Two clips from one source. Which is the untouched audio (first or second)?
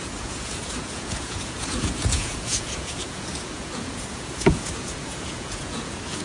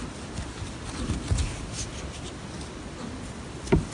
second